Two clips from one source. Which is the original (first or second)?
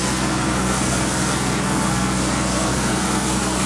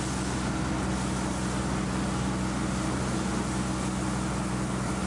second